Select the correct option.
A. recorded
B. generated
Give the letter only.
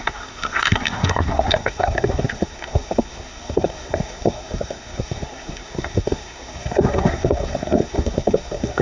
B